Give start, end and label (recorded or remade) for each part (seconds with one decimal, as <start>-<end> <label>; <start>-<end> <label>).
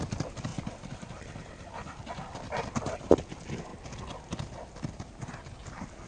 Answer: 0.0-6.1 recorded